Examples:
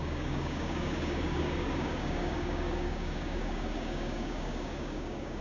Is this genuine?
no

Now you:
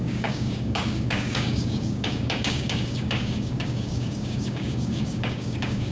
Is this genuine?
no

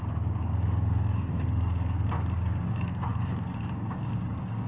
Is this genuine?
no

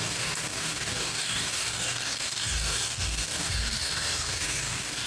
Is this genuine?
no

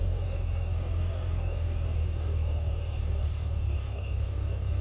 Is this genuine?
no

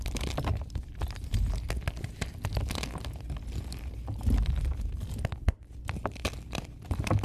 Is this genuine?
yes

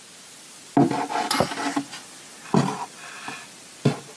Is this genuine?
yes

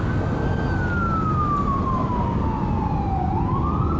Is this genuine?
yes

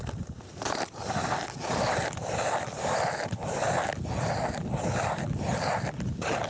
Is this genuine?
yes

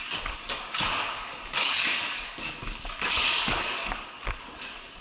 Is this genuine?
no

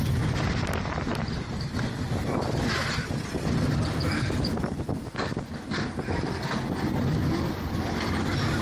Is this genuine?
yes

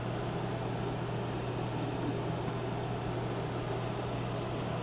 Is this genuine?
yes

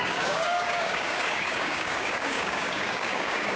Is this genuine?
no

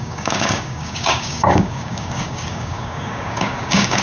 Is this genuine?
no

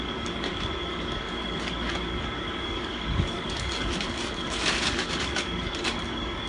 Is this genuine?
no